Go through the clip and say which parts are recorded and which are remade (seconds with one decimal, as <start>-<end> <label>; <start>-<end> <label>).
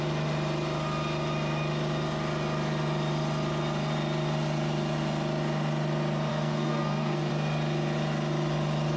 0.0-6.3 recorded; 6.3-7.3 remade; 7.3-9.0 recorded